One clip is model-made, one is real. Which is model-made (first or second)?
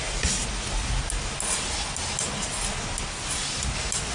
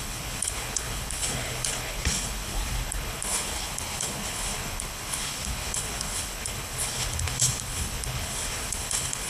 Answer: second